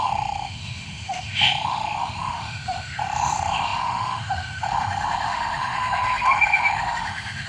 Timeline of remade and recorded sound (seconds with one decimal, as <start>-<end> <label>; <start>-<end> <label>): 0.0-7.5 remade